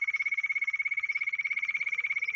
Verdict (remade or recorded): recorded